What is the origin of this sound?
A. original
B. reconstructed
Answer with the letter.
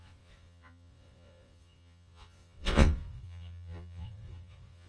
B